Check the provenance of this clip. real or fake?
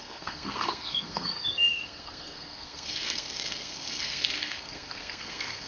fake